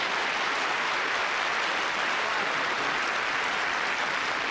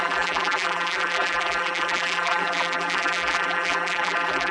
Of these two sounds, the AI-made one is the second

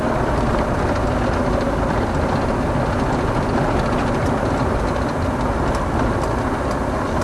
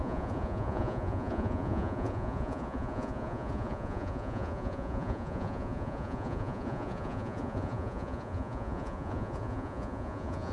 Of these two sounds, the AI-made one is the second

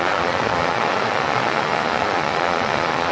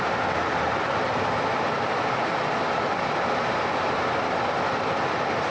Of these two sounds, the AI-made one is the first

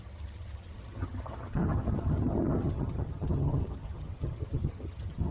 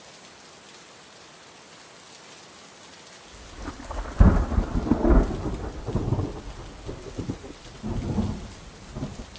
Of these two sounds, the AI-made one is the first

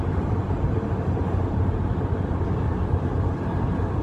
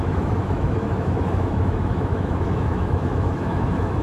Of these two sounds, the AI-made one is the second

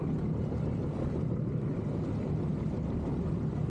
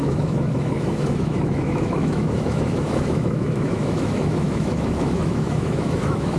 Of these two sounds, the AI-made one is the second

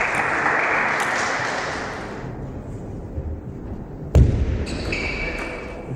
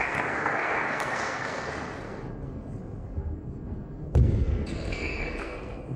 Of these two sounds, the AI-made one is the second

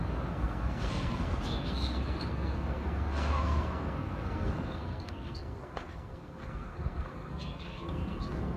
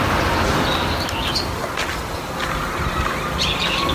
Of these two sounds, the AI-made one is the first